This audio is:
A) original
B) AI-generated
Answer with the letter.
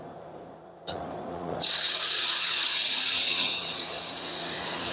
B